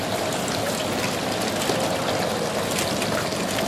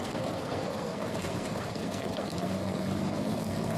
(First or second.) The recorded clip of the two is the first